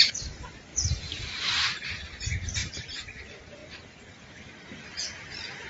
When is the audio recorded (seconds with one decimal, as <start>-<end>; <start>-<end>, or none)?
0.0-5.7